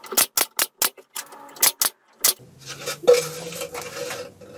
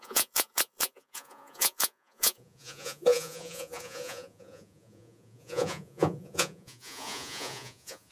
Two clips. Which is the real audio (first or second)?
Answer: first